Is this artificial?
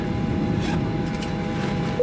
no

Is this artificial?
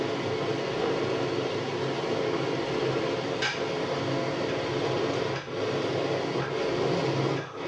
no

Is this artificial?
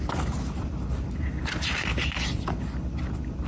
no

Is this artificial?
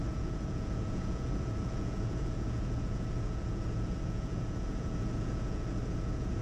yes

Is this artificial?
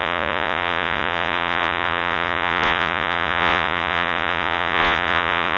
yes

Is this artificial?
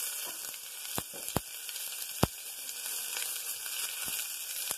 no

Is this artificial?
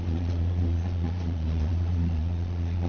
yes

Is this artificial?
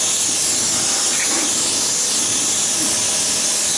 no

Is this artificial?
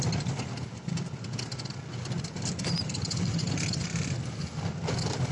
no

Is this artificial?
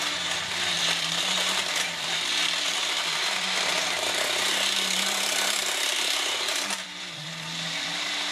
yes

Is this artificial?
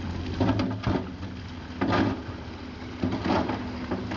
no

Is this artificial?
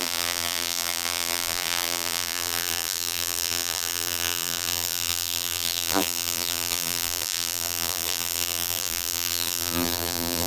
yes